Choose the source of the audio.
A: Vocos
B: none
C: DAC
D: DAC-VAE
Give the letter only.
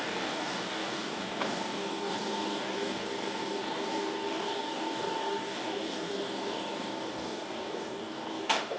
C